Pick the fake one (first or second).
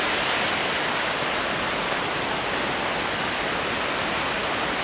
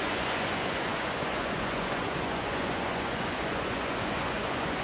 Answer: second